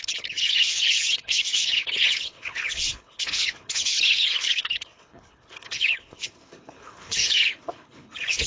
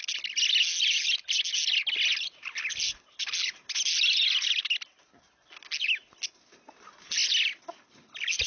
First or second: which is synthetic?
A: first